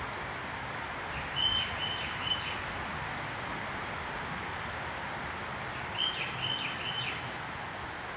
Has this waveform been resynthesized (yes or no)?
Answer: no